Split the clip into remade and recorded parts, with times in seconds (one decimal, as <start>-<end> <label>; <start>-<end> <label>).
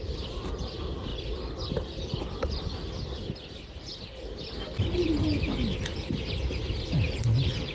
0.0-7.7 recorded